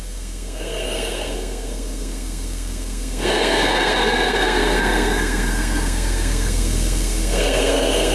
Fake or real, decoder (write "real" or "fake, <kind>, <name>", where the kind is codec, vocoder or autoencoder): fake, codec, SNAC